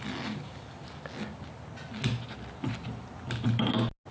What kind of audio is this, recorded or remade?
recorded